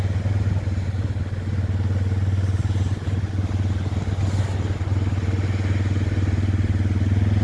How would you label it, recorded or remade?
recorded